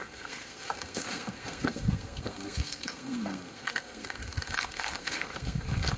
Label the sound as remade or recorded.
remade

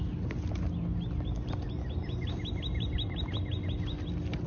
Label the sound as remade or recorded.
recorded